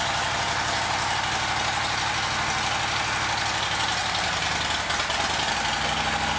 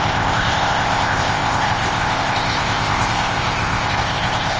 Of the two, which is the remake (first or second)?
second